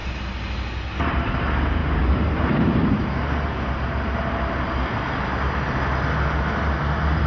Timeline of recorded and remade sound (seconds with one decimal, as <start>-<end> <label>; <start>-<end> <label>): 0.0-7.3 recorded